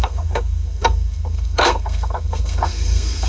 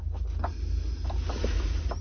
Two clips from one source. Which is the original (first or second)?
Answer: second